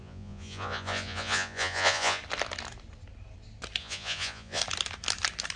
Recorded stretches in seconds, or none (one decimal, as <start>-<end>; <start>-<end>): 2.2-3.8; 4.6-5.6